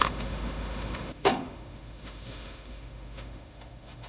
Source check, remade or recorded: remade